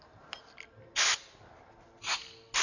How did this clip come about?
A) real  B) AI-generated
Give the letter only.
A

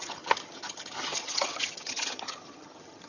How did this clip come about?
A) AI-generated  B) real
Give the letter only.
A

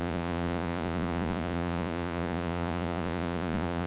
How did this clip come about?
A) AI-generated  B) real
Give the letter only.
A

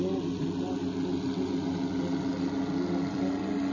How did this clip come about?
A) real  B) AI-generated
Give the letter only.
A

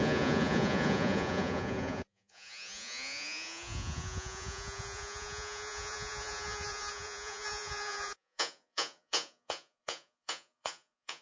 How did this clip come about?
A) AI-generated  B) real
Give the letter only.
A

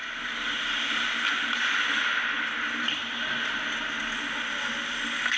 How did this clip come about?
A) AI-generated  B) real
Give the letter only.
B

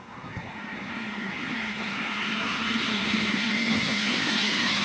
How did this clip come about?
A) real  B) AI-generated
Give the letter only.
B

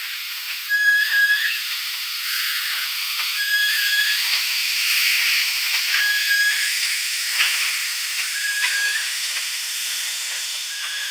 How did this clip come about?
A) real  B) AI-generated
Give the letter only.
B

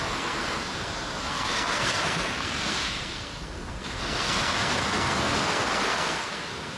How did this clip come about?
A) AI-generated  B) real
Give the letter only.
A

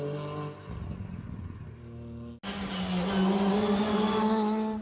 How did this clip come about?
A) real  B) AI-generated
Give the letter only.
A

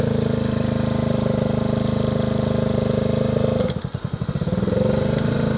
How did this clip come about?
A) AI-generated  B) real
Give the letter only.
B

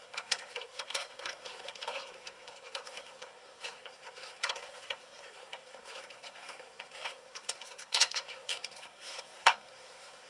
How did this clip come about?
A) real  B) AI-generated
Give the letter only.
B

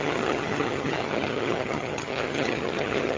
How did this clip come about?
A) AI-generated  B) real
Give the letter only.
A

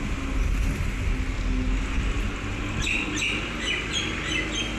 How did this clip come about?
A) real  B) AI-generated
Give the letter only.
A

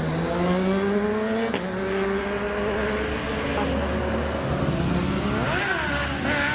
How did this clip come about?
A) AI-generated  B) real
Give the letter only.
B